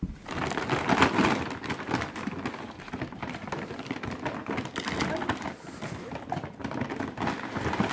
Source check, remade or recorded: recorded